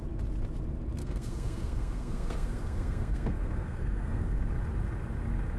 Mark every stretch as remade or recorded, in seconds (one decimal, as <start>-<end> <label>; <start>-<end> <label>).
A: 0.0-1.0 recorded; 1.0-4.4 remade; 4.4-5.6 recorded